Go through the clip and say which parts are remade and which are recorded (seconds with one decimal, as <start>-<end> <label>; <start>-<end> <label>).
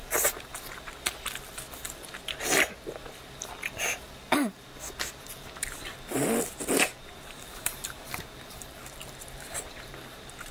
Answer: 0.0-5.1 recorded; 5.1-6.2 remade; 6.2-6.7 recorded; 6.7-10.5 remade